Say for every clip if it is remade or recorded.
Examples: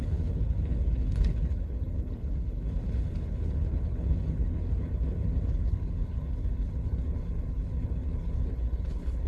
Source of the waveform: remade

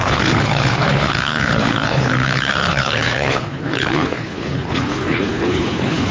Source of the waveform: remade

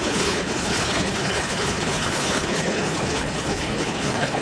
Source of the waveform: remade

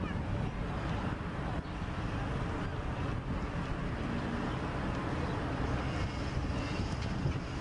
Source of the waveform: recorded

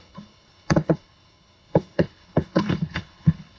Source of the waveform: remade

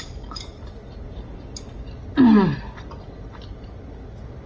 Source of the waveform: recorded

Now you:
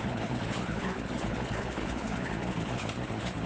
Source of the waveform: remade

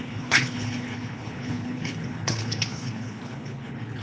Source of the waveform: remade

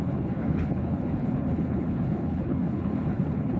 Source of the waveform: remade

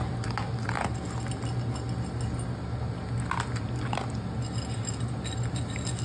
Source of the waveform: recorded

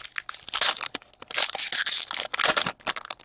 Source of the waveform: recorded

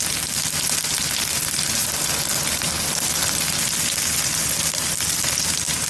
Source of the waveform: recorded